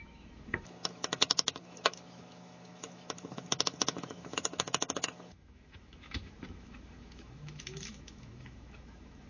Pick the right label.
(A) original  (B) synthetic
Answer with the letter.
B